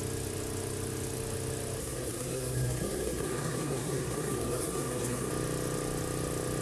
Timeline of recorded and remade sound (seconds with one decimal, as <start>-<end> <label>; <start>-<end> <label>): 0.0-1.8 recorded; 1.8-5.3 remade; 5.3-6.6 recorded